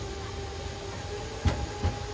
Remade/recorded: recorded